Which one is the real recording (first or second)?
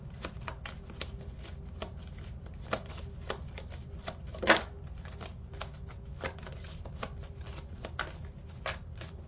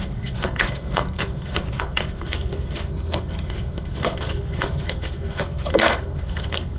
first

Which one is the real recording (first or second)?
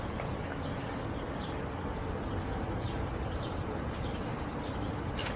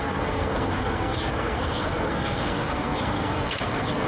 first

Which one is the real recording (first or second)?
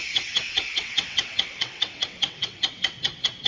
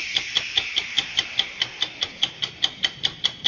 second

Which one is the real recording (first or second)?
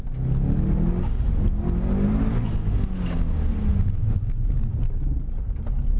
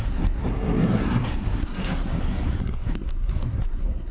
first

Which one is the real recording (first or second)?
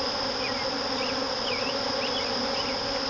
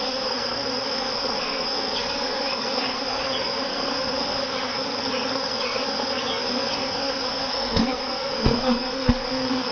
first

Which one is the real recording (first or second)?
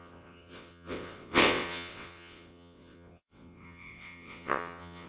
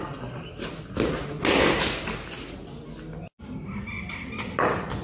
second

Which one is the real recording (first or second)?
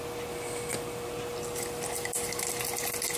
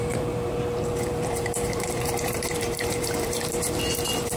first